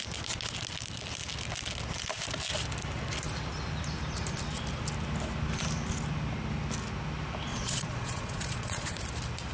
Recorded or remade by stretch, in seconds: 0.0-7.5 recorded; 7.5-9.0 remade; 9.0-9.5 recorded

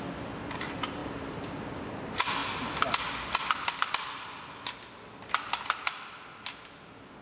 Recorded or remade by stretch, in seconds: 0.0-7.2 recorded

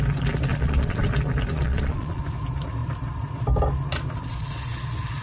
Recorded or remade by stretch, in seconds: 0.0-0.5 recorded; 0.5-1.1 remade; 1.1-1.5 recorded; 1.5-2.2 remade; 2.2-5.2 recorded

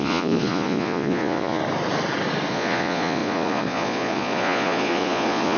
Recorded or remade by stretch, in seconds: 0.0-1.6 remade; 1.6-2.5 recorded; 2.5-5.6 remade

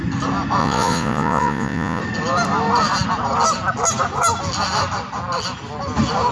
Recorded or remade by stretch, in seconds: 0.0-0.6 recorded; 0.6-2.0 remade; 2.0-6.3 recorded

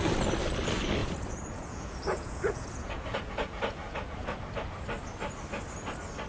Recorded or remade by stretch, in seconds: 0.0-1.0 recorded; 1.0-4.4 remade; 4.4-6.3 recorded